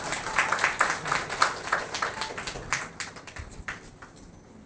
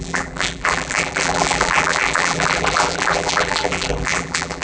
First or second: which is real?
first